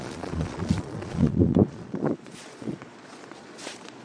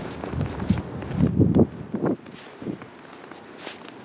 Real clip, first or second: second